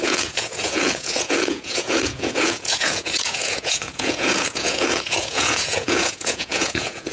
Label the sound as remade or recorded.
remade